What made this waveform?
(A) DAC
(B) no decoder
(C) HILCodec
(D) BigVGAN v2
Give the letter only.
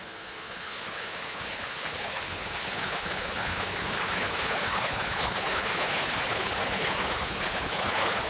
C